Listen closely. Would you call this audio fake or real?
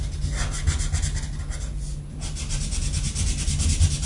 real